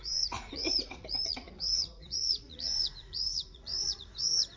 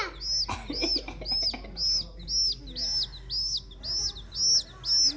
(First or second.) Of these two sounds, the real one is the second